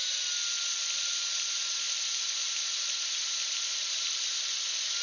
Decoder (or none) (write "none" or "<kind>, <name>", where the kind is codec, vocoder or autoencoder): none